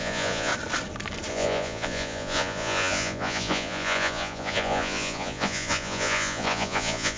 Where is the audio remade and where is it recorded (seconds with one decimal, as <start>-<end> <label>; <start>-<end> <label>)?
0.0-0.5 remade; 0.5-1.3 recorded; 1.3-7.2 remade